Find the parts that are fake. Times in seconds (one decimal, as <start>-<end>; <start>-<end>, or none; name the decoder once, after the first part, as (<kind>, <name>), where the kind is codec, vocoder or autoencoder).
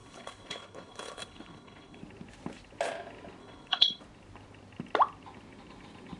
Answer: 0.0-2.0 (codec, HILCodec); 3.4-4.0